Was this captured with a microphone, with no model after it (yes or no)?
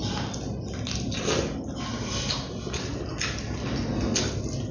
yes